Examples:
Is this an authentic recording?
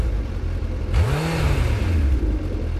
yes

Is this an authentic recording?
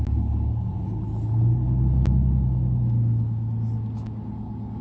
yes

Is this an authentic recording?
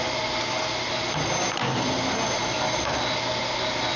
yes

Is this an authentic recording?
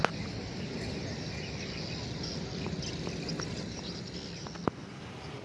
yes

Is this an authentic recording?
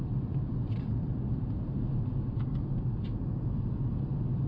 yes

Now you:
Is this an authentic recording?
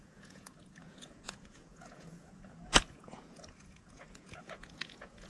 no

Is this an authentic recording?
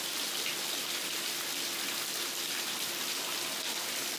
yes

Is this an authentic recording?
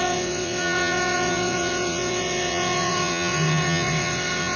no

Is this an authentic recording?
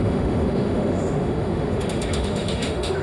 no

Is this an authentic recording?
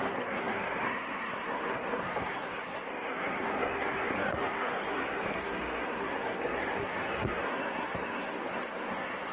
no